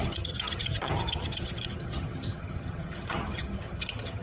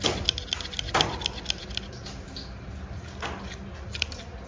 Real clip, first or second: second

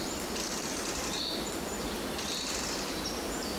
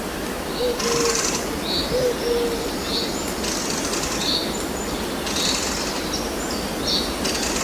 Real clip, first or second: second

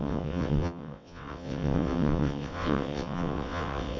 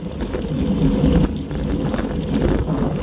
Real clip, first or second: second